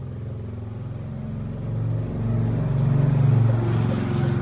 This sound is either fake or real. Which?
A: real